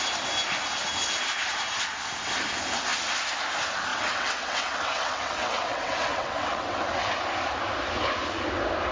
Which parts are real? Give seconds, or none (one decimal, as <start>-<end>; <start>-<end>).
0.0-3.9; 7.2-8.9

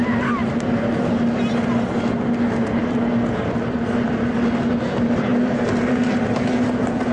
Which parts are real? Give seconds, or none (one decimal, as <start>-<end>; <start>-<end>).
0.0-7.1

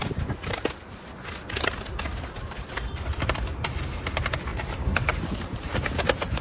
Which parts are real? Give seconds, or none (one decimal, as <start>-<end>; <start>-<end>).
0.0-4.5; 5.8-6.4

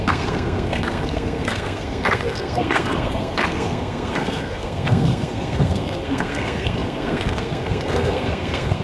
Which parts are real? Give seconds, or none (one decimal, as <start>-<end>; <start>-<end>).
none

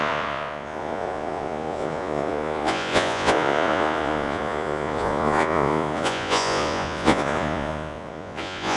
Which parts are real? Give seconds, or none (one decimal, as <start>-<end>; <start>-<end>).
none

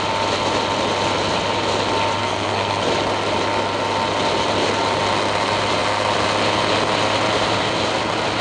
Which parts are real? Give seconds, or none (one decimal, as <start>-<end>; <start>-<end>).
0.0-2.2; 2.8-8.4

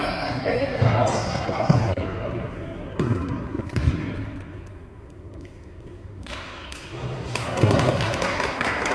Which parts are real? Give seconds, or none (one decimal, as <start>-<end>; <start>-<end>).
none